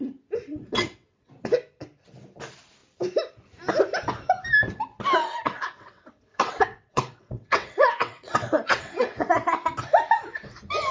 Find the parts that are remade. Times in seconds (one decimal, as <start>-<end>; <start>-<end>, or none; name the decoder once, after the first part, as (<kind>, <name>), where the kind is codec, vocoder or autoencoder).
0.5-1.3 (vocoder, WaveNeXt); 5.2-9.3